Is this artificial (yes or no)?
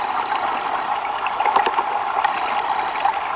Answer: no